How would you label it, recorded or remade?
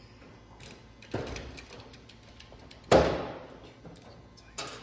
recorded